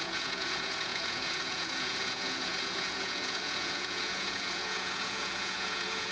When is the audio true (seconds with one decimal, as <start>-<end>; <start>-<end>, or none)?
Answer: none